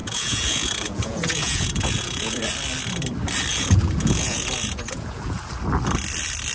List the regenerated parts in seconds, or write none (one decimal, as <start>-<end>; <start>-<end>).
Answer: 0.0-2.4; 3.5-5.4